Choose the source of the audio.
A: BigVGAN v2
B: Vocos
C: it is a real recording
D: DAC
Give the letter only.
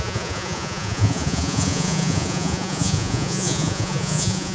B